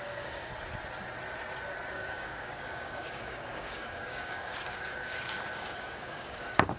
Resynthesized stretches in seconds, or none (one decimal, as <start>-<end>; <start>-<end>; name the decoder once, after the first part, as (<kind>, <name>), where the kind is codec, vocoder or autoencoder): 0.0-0.5 (codec, DAC); 1.9-6.8